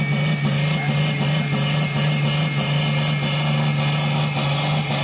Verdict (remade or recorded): recorded